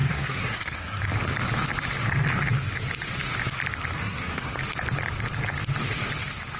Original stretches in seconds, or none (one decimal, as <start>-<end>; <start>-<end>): 1.0-4.0; 4.5-6.6